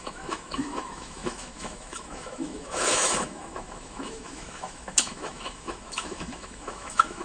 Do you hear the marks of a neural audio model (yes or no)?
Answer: yes